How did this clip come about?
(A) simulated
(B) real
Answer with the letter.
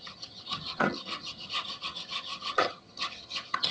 A